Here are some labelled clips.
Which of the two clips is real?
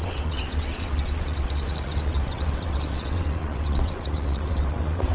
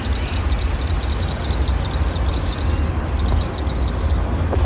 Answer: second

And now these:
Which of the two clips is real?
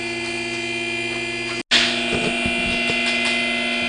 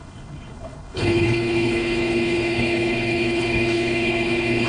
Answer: first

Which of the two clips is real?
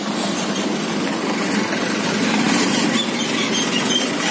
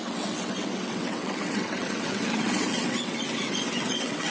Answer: first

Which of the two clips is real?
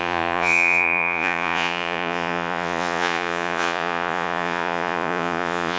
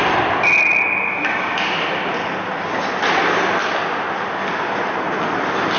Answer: second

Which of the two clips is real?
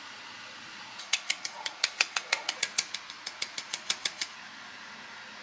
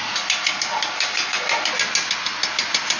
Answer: second